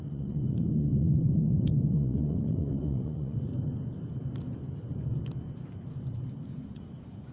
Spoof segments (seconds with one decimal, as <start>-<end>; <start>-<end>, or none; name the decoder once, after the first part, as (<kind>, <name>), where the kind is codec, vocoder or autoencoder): 0.0-3.5 (vocoder, Vocos); 6.5-7.3